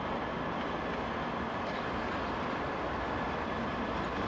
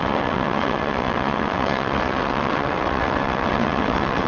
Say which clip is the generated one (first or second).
second